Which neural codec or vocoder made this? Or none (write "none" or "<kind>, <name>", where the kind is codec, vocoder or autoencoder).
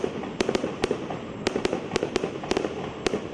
none